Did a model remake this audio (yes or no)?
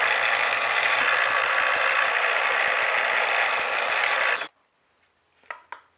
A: no